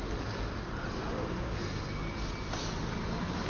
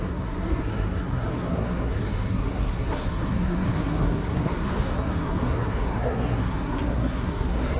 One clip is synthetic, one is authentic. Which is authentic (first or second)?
first